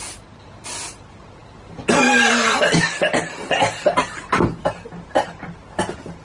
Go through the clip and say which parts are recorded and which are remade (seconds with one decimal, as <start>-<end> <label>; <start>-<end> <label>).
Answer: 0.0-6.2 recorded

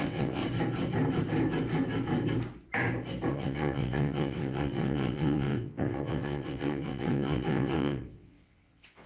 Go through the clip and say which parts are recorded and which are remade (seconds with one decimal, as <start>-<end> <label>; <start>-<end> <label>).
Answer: 0.0-0.4 remade; 0.4-3.3 recorded; 3.3-9.1 remade

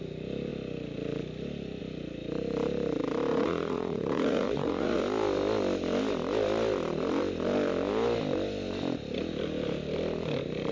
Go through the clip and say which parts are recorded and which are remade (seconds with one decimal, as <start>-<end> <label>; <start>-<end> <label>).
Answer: 0.0-3.3 recorded; 3.3-5.0 remade; 5.0-10.7 recorded